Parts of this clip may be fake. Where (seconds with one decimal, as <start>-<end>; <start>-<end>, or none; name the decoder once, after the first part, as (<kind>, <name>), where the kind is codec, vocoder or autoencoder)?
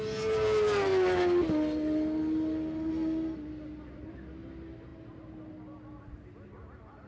none